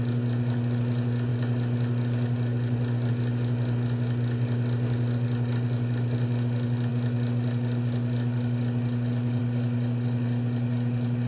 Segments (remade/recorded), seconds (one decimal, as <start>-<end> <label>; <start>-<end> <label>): 0.0-11.3 recorded